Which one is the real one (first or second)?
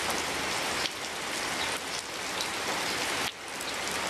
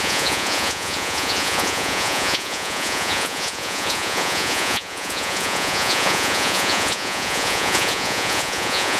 first